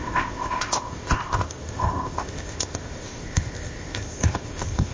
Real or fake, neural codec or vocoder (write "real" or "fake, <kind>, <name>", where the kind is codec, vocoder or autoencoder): fake, codec, ZipCodec